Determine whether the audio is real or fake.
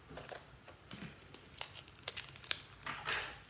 real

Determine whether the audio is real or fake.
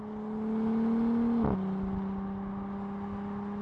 real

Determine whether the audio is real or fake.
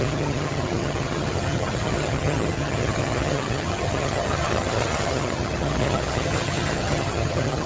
fake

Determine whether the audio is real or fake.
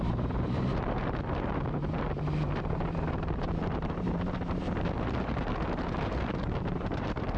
fake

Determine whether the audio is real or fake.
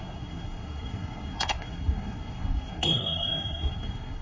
fake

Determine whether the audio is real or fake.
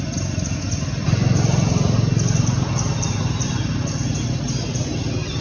real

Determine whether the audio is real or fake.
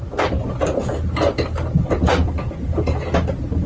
real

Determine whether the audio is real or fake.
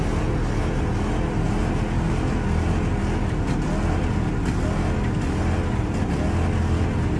real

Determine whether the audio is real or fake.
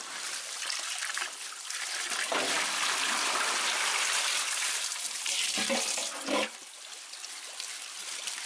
real